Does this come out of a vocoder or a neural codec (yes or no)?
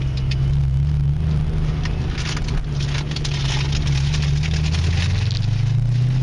no